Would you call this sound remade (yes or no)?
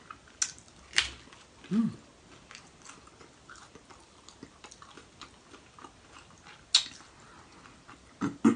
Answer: no